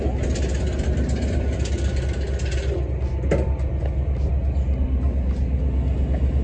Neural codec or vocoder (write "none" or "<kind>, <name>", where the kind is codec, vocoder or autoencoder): none